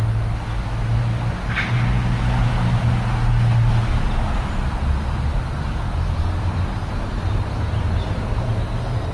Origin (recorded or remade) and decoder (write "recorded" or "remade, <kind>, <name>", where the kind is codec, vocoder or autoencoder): recorded